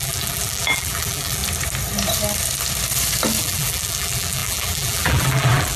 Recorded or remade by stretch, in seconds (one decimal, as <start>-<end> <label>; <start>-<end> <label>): 0.0-1.4 remade; 1.4-3.4 recorded; 3.4-5.8 remade